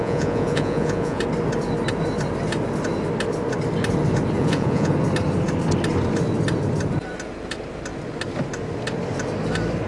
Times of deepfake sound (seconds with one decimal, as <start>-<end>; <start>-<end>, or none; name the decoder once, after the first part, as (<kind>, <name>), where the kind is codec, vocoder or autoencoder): 0.0-1.2 (vocoder, Vocos); 4.4-4.9